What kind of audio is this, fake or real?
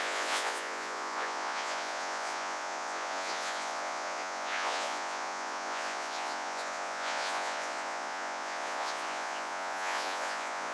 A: fake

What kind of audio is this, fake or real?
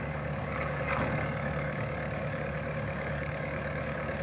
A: fake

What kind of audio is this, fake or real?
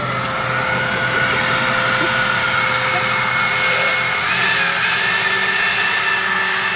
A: real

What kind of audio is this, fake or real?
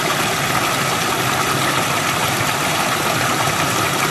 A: real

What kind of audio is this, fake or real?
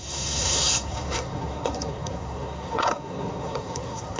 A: fake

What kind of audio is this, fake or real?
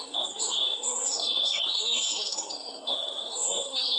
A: fake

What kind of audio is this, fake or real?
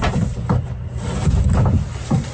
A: real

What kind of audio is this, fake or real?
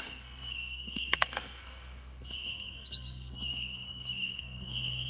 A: fake